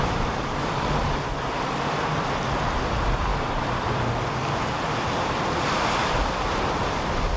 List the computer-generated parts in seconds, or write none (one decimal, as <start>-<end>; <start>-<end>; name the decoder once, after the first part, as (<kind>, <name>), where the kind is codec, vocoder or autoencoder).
0.0-7.4 (vocoder, BigVGAN v2)

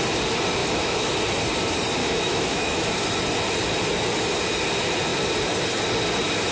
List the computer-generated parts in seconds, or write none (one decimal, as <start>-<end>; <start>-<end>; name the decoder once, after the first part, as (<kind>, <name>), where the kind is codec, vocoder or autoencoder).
0.6-1.1 (autoencoder, DAC-VAE); 2.0-2.8

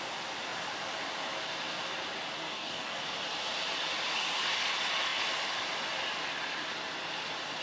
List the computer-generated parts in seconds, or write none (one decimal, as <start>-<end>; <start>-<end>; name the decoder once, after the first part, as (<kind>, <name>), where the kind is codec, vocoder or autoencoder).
2.4-3.0 (codec, DAC)

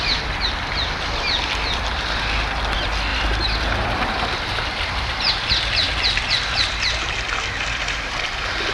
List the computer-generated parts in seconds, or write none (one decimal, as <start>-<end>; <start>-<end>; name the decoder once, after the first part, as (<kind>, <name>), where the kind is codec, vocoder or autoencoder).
3.1-4.9 (vocoder, BigVGAN v2)

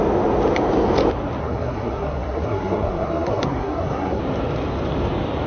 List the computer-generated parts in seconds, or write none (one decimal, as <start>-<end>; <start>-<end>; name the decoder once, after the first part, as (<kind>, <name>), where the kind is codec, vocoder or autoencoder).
1.4-4.2 (codec, SNAC)

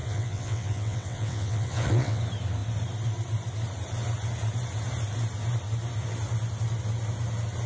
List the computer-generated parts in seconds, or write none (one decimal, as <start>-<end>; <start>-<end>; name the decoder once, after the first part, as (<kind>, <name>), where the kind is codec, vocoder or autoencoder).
0.0-2.2 (vocoder, WaveNeXt)

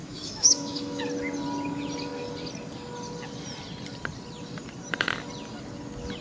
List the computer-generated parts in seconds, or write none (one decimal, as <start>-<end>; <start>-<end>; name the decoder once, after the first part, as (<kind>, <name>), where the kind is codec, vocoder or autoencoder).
0.0-1.0 (autoencoder, DAC-VAE)